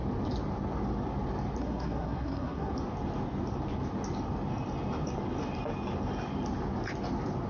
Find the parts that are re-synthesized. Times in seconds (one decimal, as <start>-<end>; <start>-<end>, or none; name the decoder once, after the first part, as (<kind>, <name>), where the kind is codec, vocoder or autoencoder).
1.6-2.7 (codec, SNAC)